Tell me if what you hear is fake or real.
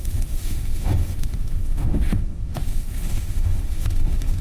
fake